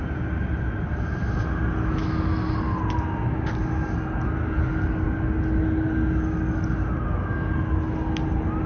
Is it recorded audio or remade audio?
recorded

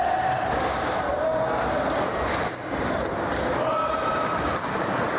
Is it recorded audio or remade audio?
recorded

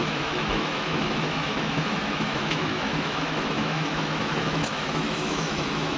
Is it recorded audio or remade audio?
remade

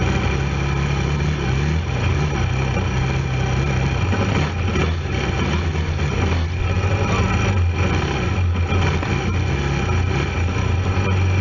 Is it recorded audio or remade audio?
recorded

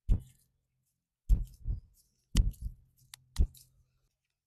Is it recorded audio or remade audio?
recorded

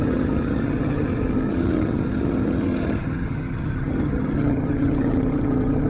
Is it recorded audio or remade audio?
remade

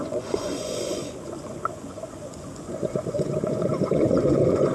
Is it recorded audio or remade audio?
remade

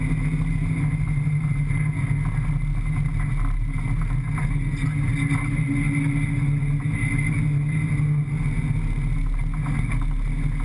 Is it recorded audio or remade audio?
recorded